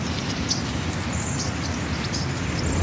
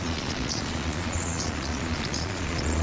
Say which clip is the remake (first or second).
second